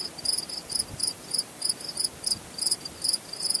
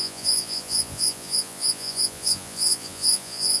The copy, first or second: second